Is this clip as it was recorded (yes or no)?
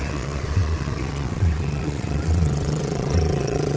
no